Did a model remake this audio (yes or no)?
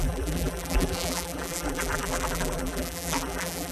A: yes